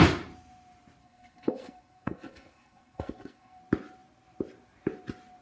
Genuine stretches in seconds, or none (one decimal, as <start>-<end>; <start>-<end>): 0.0-1.0; 3.6-5.4